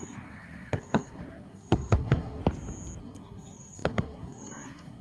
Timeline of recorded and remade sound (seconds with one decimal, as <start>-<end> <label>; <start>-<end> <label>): 0.0-2.4 remade; 2.4-3.0 recorded; 3.0-5.0 remade